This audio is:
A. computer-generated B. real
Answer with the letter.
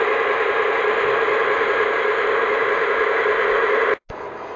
B